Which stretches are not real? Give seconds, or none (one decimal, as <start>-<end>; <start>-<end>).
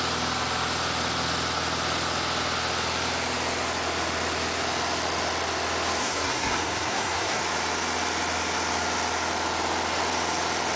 6.0-7.4